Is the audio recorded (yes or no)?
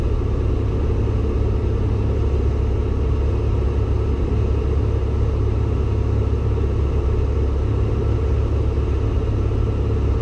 yes